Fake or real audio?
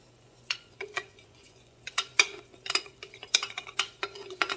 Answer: fake